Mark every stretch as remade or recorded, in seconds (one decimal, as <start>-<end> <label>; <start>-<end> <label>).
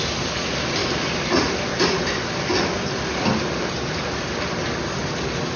0.0-0.8 recorded; 0.8-4.2 remade; 4.2-5.6 recorded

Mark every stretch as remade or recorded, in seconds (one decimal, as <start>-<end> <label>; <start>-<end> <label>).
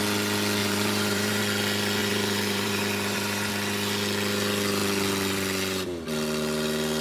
0.0-0.6 recorded; 0.6-1.4 remade; 1.4-2.0 recorded; 2.0-3.5 remade; 3.5-7.0 recorded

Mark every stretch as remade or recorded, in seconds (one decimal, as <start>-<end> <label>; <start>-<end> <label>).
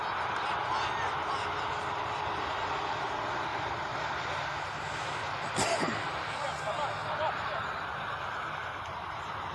0.0-3.5 recorded; 3.5-5.5 remade; 5.5-7.0 recorded; 7.0-7.9 remade; 7.9-9.5 recorded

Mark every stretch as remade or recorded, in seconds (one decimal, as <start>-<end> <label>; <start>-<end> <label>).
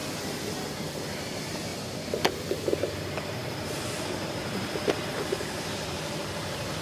0.0-0.7 recorded; 0.7-1.7 remade; 1.7-2.5 recorded; 2.5-6.8 remade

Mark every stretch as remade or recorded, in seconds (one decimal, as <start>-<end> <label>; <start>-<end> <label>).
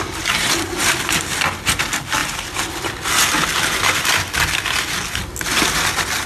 0.0-6.3 recorded